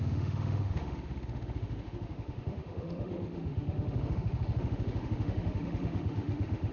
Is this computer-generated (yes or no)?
yes